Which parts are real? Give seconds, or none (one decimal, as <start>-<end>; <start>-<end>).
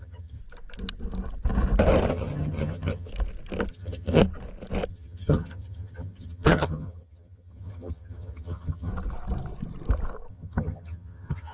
0.4-2.1; 3.1-3.7; 4.2-4.9; 8.9-10.3